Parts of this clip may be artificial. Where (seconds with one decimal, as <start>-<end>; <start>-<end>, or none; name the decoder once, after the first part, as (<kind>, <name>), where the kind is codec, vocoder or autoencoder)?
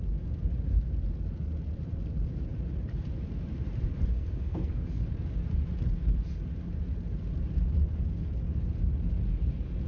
4.1-5.0 (codec, SNAC)